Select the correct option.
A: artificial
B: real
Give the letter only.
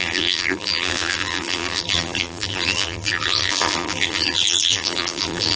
A